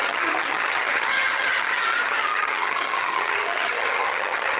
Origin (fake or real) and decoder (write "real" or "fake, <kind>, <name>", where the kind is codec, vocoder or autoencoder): fake, vocoder, HiFi-GAN